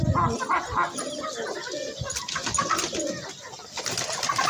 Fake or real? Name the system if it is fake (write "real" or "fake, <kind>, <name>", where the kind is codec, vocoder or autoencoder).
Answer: real